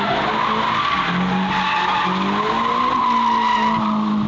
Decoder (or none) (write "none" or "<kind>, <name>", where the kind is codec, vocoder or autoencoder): none